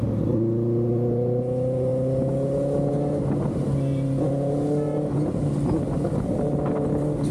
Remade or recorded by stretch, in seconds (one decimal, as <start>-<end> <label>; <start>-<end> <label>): 0.0-7.3 recorded